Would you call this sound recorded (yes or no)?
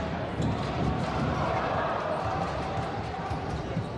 no